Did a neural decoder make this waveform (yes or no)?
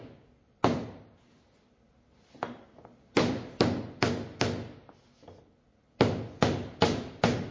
no